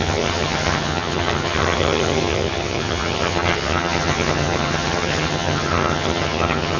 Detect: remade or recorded remade